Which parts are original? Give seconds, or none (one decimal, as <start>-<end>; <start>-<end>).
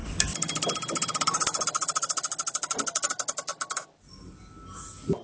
0.0-5.2